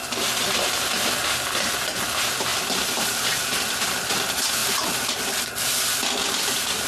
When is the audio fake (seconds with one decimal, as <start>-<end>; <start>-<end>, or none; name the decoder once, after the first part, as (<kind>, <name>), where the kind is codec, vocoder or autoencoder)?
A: 2.5-3.4 (vocoder, BigVGAN v2); 4.6-6.9